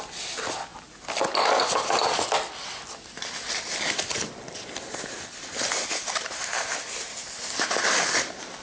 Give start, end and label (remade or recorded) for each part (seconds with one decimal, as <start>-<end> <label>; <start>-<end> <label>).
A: 0.0-8.6 recorded